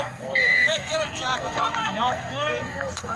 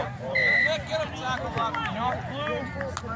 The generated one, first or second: first